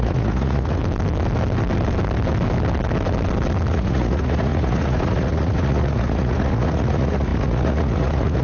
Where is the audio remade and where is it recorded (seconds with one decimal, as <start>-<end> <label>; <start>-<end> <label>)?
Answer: 0.0-0.8 remade; 0.8-3.7 recorded; 3.7-8.4 remade